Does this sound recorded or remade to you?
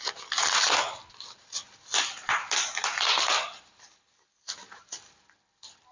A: recorded